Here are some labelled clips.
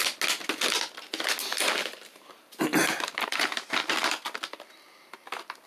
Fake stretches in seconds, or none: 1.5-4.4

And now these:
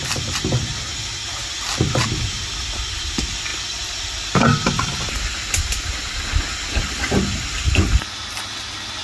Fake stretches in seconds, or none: 3.5-6.2

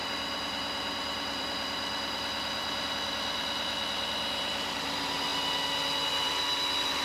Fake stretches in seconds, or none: 0.0-5.3; 6.1-7.0

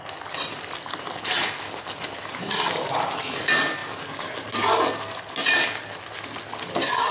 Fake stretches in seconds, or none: none

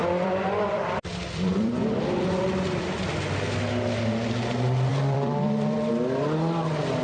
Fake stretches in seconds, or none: 0.0-3.1; 4.9-5.9

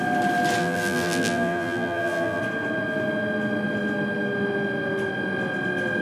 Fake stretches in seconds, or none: 0.6-2.4

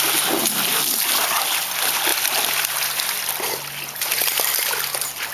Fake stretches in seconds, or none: none

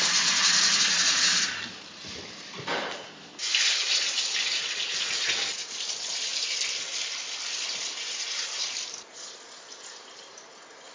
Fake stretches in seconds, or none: 0.0-0.4; 1.4-6.3; 7.0-10.9